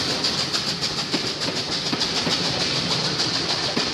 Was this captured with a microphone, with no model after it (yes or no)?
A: yes